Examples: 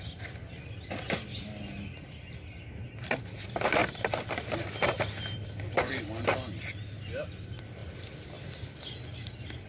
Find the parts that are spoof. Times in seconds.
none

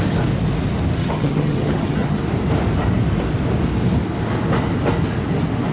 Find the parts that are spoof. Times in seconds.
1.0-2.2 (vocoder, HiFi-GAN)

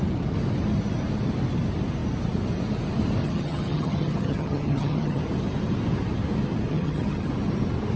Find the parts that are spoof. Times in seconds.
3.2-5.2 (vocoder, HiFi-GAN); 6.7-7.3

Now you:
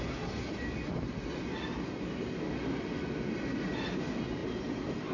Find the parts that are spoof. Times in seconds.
none

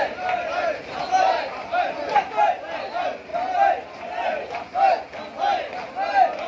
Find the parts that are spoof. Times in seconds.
none